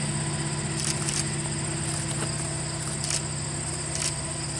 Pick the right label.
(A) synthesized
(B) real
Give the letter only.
B